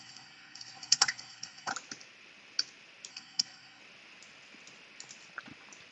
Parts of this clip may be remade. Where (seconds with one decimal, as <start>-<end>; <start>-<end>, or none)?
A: 0.0-1.7; 3.1-3.8